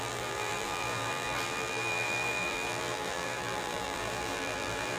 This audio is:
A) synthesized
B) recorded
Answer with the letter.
A